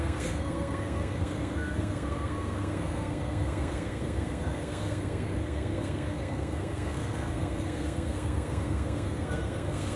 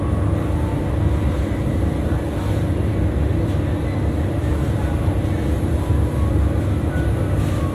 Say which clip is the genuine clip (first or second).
second